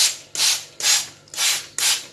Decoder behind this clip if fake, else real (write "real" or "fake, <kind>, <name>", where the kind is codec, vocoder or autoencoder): real